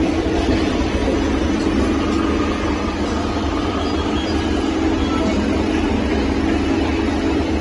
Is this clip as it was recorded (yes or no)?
yes